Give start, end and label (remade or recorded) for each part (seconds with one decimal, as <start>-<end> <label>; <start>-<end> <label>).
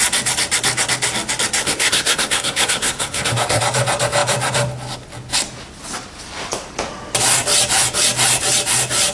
0.0-1.6 recorded; 1.6-3.6 remade; 3.6-9.1 recorded